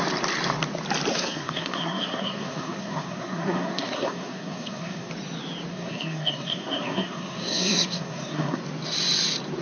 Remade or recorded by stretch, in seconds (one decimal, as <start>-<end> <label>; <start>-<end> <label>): 0.0-1.1 recorded; 1.1-5.1 remade; 5.1-5.7 recorded; 5.7-8.6 remade; 8.6-9.6 recorded